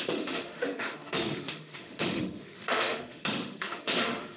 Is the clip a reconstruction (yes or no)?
yes